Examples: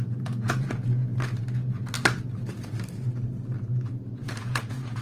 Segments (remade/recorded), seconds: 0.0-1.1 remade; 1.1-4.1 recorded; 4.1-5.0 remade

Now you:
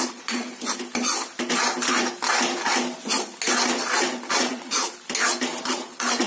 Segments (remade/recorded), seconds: 0.0-0.5 remade; 0.5-4.3 recorded; 4.3-4.8 remade; 4.8-5.6 recorded; 5.6-6.3 remade

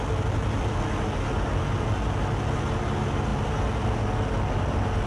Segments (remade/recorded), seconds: 0.0-5.1 recorded

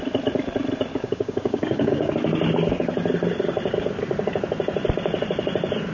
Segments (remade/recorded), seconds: 0.0-0.9 recorded; 0.9-2.1 remade; 2.1-5.9 recorded

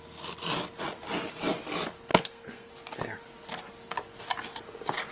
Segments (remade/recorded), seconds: 0.0-2.1 recorded; 2.1-2.7 remade; 2.7-5.1 recorded